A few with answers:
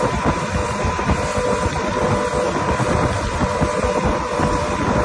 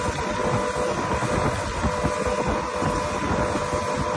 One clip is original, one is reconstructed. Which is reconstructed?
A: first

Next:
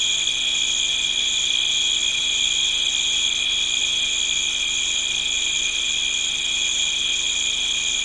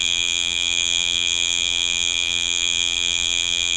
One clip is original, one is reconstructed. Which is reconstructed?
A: second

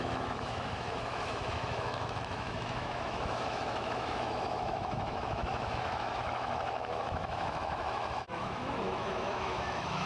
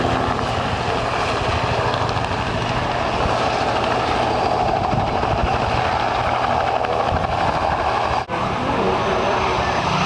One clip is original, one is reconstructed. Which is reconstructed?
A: first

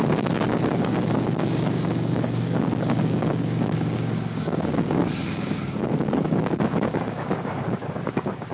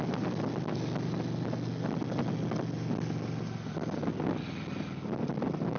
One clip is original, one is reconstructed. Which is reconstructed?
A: first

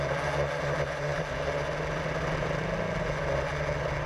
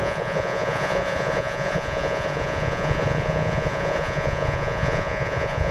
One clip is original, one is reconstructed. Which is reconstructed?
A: second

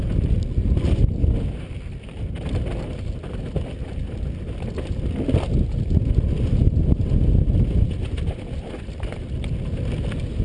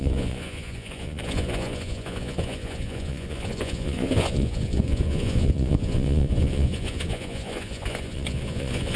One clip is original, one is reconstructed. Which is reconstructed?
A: second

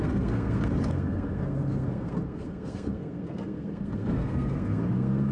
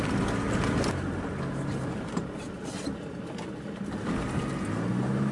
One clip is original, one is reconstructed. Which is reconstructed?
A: first